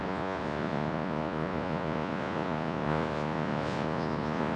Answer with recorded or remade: remade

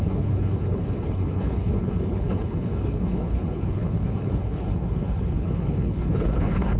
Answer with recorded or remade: remade